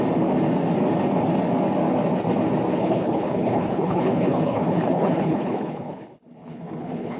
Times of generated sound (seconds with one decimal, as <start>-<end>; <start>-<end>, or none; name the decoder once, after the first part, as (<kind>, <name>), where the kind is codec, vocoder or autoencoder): 2.7-7.2 (codec, HILCodec)